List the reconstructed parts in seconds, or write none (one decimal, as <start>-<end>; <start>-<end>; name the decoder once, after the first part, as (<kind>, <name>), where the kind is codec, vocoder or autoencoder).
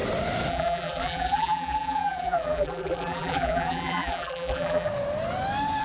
0.5-4.9 (vocoder, BigVGAN v2)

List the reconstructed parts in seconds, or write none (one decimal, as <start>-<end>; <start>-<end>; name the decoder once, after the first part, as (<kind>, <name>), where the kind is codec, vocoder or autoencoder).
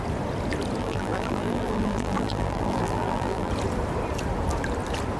0.8-3.5 (vocoder, BigVGAN v2)